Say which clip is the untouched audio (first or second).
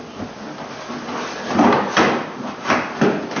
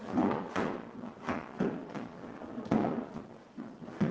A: first